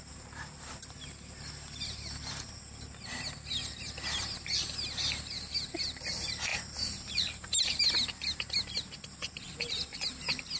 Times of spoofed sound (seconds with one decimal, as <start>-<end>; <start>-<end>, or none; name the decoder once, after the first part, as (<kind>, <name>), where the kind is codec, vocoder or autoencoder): 6.5-7.6 (vocoder, BigVGAN v2)

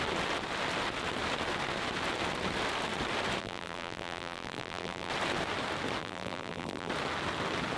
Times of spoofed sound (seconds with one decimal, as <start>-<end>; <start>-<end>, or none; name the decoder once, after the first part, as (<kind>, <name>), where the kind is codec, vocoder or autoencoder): 3.4-5.1 (vocoder, BigVGAN v2); 6.0-6.9